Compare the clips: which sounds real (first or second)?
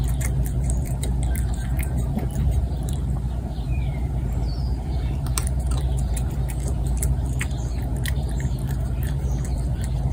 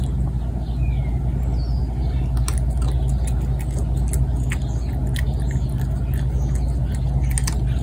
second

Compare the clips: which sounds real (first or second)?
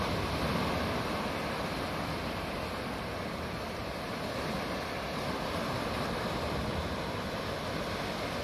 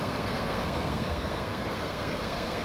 first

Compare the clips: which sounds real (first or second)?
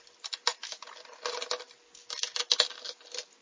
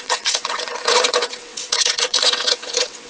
first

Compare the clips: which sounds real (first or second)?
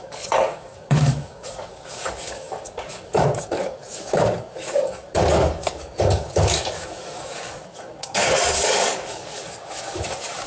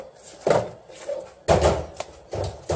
second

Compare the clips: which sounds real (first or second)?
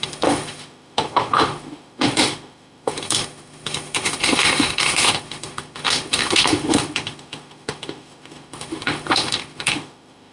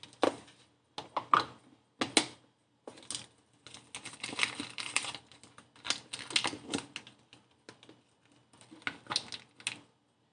second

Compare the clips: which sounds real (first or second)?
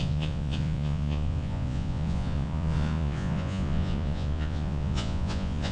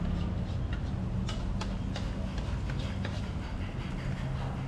second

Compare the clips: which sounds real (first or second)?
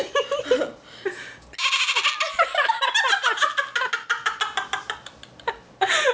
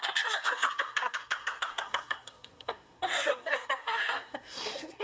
first